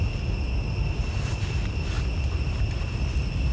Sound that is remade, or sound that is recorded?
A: recorded